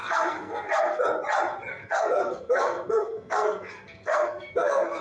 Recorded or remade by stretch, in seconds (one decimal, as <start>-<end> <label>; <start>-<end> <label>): 0.0-1.0 remade; 1.0-1.7 recorded; 1.7-5.0 remade

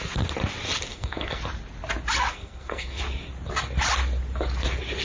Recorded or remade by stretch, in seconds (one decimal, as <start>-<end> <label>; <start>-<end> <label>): 0.0-0.9 recorded; 0.9-1.4 remade; 1.4-2.3 recorded; 2.3-3.0 remade; 3.0-5.0 recorded

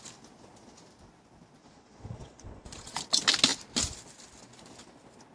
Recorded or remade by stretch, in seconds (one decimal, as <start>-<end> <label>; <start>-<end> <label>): 0.0-1.6 recorded; 1.6-3.0 remade; 3.0-5.3 recorded

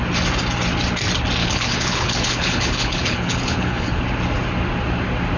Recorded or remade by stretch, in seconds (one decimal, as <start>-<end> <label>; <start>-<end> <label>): 0.0-1.4 recorded; 1.4-4.0 remade; 4.0-5.4 recorded